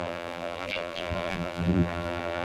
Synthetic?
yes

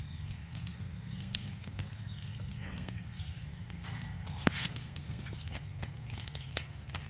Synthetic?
yes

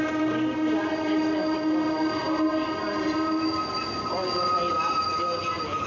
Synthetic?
no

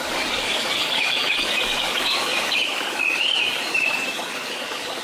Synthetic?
yes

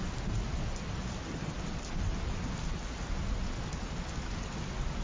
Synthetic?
no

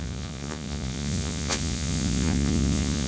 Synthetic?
yes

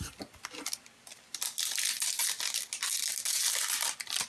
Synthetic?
no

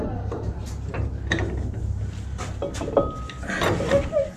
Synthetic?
no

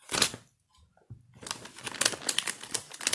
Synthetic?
no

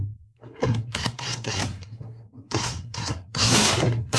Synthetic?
yes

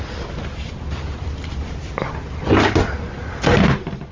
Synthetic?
no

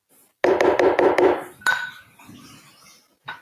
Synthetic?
no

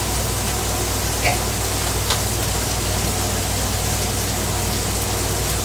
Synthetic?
no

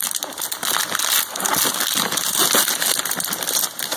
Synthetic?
no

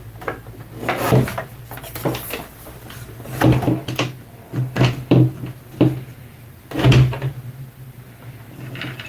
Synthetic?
no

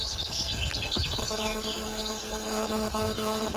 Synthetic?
yes